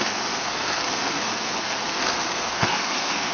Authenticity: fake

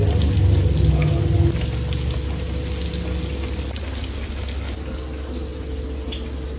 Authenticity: real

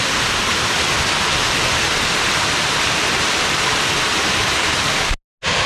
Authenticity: real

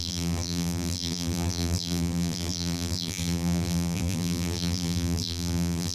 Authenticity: fake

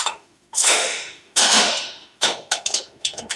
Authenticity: fake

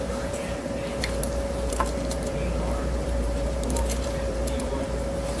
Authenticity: fake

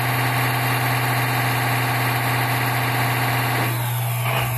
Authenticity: real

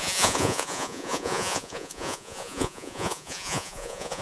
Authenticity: fake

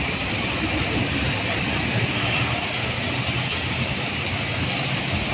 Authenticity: real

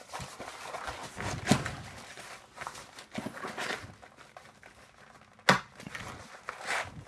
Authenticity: real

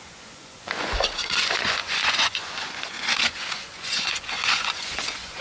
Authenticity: fake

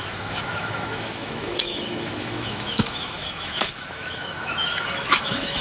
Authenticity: fake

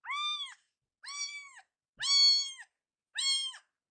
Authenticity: real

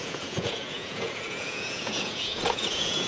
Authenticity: fake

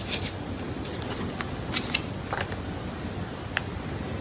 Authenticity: real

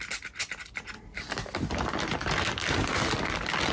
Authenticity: real